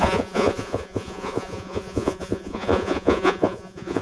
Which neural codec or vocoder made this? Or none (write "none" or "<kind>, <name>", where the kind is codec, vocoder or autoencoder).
vocoder, Vocos